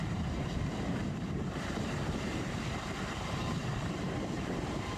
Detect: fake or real fake